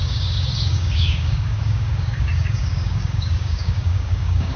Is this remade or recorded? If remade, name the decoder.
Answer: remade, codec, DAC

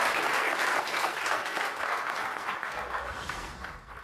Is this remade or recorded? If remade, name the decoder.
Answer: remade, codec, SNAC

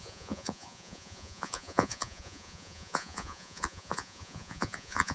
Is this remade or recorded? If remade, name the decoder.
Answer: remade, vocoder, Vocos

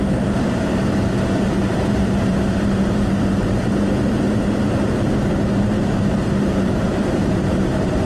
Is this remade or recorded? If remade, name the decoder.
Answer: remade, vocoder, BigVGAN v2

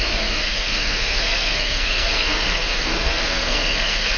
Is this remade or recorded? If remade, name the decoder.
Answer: remade, codec, SNAC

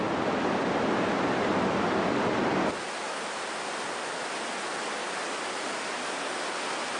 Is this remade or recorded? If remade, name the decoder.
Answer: recorded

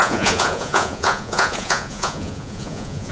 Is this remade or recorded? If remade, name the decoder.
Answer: remade, vocoder, Vocos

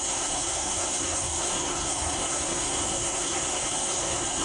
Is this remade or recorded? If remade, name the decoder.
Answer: remade, codec, SNAC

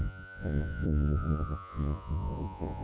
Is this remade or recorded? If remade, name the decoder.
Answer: remade, vocoder, Vocos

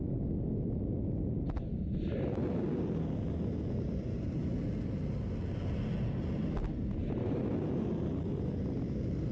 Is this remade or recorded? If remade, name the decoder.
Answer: recorded